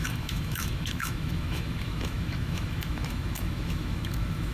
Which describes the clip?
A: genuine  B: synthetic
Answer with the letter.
B